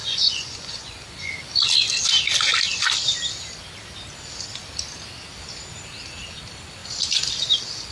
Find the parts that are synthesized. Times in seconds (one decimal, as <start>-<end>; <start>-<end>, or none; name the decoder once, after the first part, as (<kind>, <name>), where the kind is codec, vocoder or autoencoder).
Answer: 0.0-1.3 (vocoder, Vocos)